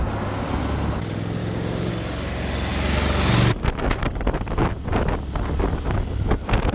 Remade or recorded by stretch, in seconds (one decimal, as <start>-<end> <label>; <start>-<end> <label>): 0.0-1.4 recorded; 1.4-1.9 remade; 1.9-6.7 recorded